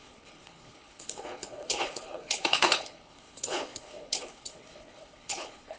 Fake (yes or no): yes